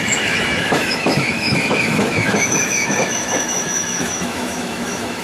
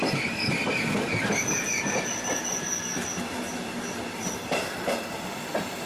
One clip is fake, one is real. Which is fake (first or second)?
first